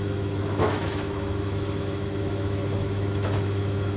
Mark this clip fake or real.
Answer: fake